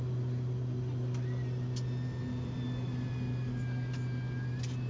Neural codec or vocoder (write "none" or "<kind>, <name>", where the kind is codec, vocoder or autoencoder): none